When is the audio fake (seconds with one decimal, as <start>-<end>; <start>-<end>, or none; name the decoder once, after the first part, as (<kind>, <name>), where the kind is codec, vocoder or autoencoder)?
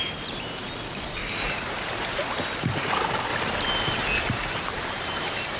0.0-0.6 (vocoder, BigVGAN v2); 1.2-2.2; 2.8-3.3; 4.3-5.6